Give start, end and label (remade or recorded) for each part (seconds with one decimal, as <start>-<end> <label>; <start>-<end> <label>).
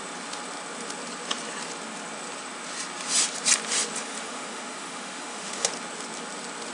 0.0-4.0 recorded; 4.0-5.7 remade; 5.7-6.7 recorded